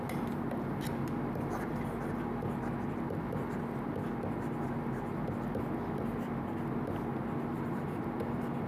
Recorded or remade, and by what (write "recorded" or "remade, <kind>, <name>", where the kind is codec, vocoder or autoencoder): recorded